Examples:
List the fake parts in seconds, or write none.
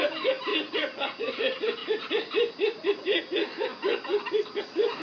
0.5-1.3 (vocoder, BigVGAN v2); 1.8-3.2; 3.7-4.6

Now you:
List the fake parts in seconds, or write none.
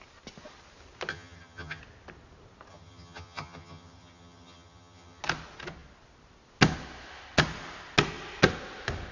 1.1-1.8 (vocoder, HiFi-GAN); 2.7-5.2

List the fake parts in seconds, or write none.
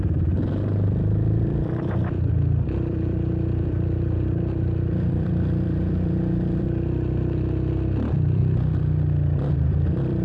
0.0-8.4 (vocoder, BigVGAN v2); 9.5-10.2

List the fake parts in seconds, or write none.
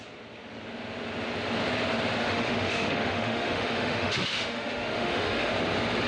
2.2-5.5 (autoencoder, DAC-VAE)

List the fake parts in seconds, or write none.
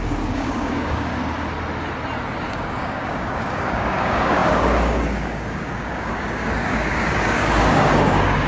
0.0-1.1 (codec, DAC); 2.5-8.5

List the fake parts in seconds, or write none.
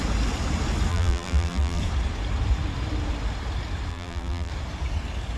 0.9-1.8 (vocoder, BigVGAN v2); 3.9-4.5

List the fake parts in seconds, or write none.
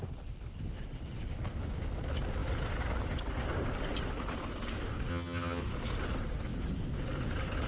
5.1-5.6 (vocoder, HiFi-GAN)